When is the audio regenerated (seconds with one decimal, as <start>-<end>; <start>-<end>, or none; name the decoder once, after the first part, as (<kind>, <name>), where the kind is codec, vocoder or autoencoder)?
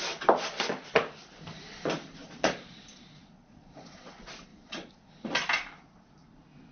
2.2-4.1 (vocoder, Vocos); 4.5-5.1